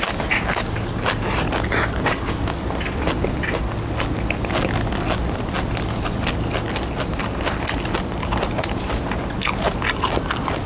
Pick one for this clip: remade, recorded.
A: recorded